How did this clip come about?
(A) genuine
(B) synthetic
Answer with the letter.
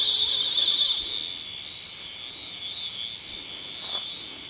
A